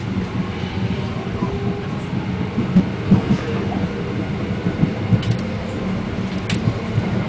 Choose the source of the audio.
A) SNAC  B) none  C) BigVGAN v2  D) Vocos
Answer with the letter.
B